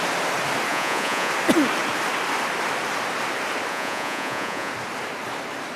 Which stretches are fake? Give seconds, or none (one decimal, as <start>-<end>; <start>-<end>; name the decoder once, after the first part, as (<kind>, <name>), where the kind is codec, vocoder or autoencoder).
0.7-1.3 (vocoder, Vocos); 3.7-4.7